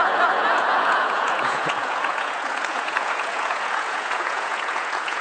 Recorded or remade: remade